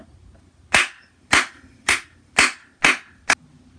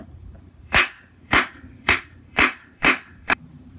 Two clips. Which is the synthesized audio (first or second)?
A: second